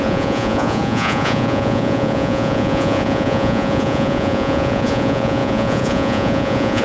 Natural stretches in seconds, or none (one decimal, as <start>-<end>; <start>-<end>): none